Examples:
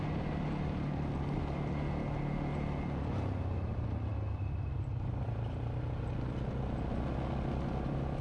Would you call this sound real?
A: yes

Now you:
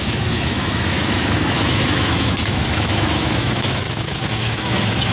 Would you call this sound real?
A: no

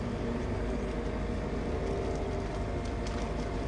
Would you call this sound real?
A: yes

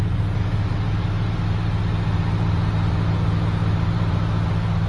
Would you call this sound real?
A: yes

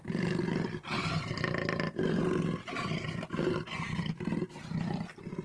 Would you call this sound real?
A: no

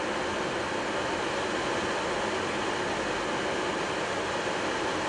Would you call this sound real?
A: yes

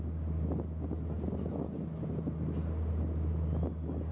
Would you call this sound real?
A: yes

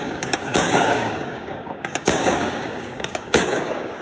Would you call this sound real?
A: no